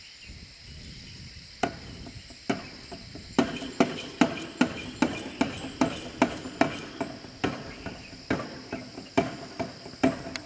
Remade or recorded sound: recorded